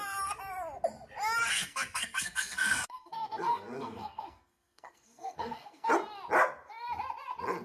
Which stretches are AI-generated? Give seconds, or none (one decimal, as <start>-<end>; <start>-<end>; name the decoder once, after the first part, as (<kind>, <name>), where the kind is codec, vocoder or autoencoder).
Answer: 1.5-5.9 (codec, SNAC)